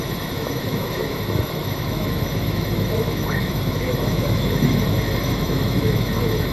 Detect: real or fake fake